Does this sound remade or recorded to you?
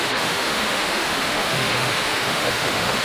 remade